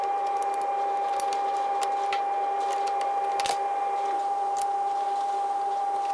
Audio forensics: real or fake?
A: real